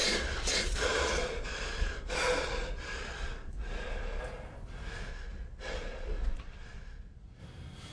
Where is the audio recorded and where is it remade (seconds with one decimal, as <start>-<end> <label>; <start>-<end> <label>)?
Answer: 0.0-4.2 remade; 4.2-5.1 recorded; 5.1-7.4 remade; 7.4-7.9 recorded